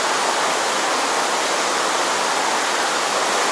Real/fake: real